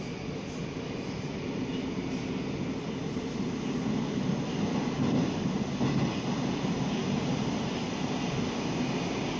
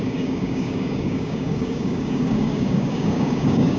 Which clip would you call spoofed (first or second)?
second